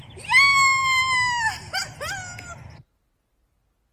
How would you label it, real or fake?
real